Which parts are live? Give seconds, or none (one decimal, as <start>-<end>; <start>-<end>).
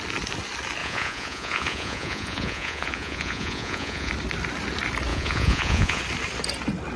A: 0.0-0.8; 4.1-5.1; 6.0-7.0